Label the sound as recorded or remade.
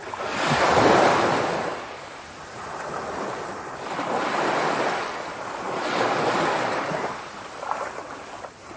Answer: recorded